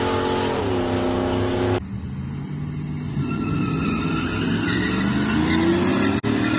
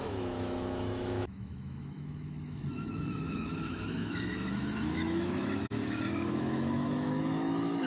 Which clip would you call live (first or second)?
first